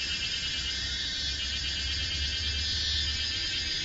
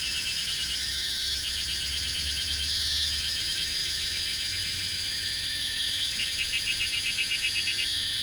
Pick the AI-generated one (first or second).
second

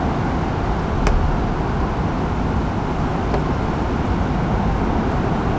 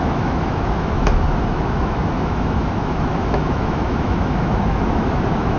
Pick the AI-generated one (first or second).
second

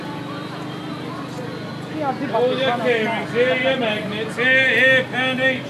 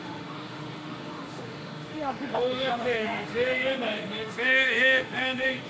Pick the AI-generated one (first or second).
second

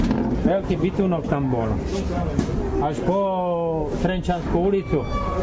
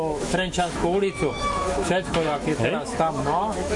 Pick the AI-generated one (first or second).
second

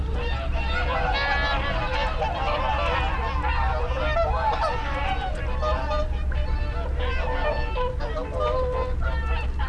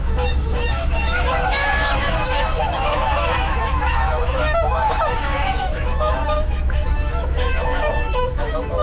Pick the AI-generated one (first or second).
second